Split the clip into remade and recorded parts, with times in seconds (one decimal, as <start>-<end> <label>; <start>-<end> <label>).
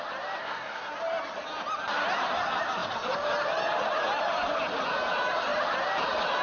0.0-0.4 recorded; 0.4-0.9 remade; 0.9-6.4 recorded